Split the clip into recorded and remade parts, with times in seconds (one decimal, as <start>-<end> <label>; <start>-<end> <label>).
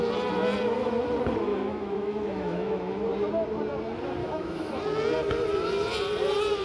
0.0-1.5 recorded; 1.5-3.0 remade; 3.0-4.2 recorded; 4.2-4.8 remade; 4.8-6.6 recorded